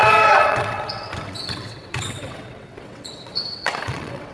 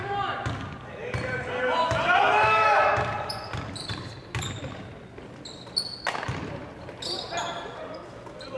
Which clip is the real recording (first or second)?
second